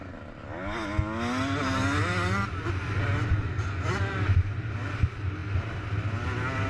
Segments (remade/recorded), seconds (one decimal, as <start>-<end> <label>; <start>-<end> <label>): 0.0-6.7 recorded